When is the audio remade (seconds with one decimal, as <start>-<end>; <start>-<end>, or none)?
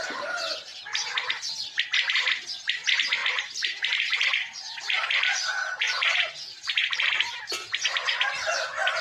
0.7-1.5; 3.2-6.3; 6.8-7.5